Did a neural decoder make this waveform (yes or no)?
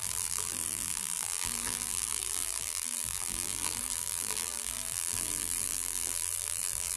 yes